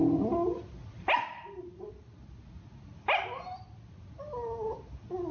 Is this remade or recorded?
recorded